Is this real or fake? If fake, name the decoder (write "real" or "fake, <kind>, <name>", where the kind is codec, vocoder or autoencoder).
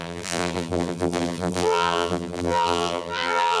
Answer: fake, vocoder, BigVGAN v2